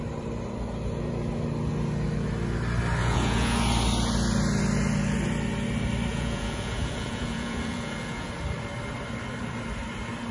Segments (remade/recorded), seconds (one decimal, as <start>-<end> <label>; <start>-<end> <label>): 0.0-3.0 recorded; 3.0-3.6 remade; 3.6-6.1 recorded; 6.1-8.3 remade; 8.3-10.3 recorded